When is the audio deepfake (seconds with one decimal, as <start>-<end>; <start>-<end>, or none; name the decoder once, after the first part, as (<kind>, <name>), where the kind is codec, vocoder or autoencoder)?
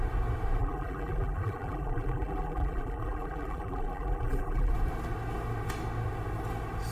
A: 0.6-4.7 (vocoder, BigVGAN v2)